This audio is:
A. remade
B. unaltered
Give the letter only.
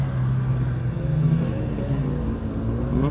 B